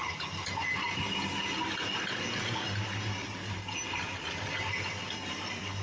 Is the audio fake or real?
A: real